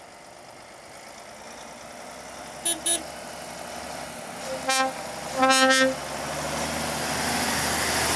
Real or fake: real